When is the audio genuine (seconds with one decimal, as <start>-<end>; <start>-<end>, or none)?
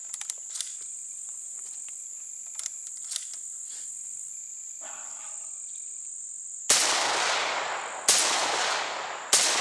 0.0-0.7; 1.6-9.6